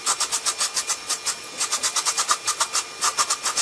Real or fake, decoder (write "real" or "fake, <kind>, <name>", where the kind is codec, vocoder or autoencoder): real